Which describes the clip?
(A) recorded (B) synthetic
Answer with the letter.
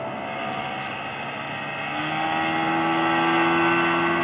A